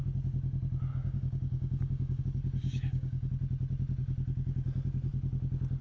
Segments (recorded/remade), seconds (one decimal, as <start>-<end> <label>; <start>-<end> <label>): 0.0-0.9 recorded; 0.9-2.2 remade; 2.2-2.6 recorded; 2.6-3.3 remade; 3.3-5.8 recorded